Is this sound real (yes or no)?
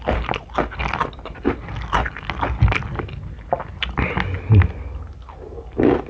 yes